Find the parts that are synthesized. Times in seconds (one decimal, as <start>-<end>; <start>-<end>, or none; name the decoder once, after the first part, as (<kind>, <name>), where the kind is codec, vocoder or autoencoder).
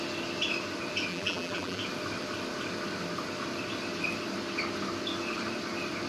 1.1-1.8 (vocoder, BigVGAN v2)